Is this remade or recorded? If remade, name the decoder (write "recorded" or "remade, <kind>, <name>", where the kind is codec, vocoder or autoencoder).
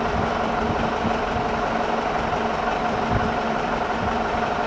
remade, vocoder, BigVGAN v2